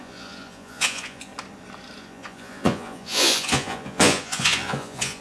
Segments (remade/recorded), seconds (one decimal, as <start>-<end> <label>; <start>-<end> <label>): 0.0-1.3 remade; 1.3-2.0 recorded; 2.0-5.2 remade